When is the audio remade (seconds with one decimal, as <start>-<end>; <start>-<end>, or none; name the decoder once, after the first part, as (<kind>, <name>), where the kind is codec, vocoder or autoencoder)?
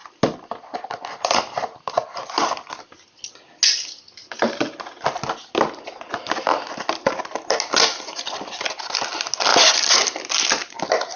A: none